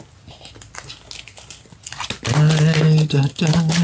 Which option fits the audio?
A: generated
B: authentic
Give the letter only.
B